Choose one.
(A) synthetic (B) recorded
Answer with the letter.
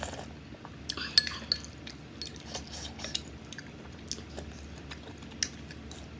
B